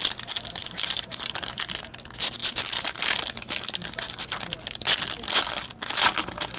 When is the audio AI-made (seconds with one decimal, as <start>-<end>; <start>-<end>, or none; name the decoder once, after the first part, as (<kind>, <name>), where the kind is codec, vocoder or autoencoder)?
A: 0.6-1.6 (vocoder, BigVGAN v2); 2.4-3.0